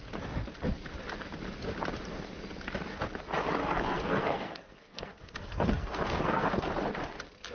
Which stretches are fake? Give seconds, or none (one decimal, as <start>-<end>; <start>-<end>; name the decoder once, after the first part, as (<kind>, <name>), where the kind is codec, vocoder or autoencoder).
3.6-6.7 (codec, SNAC)